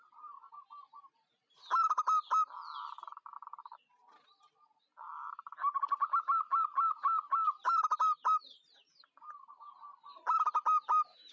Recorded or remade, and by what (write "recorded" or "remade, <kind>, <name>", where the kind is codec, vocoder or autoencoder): recorded